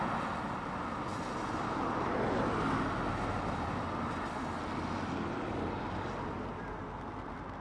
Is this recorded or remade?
recorded